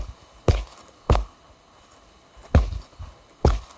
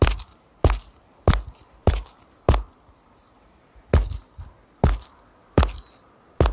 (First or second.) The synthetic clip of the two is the first